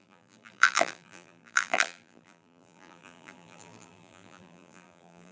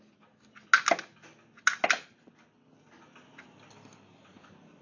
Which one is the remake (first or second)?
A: first